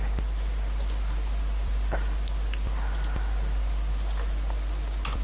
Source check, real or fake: real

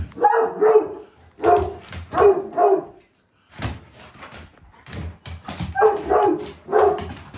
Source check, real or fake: real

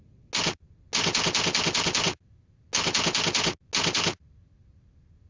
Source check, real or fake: real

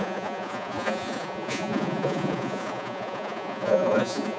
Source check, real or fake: fake